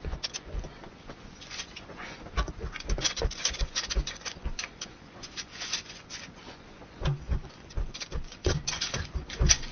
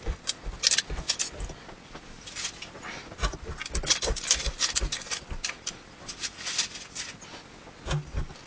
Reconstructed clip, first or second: first